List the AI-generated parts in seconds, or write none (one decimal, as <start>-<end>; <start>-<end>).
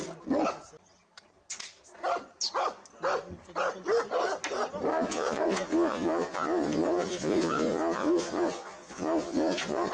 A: 4.9-9.9